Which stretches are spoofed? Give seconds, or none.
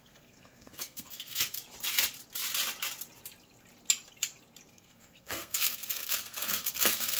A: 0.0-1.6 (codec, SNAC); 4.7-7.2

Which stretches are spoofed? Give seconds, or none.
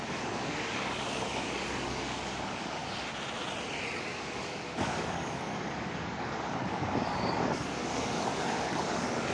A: 0.0-2.8 (codec, DAC); 4.0-9.3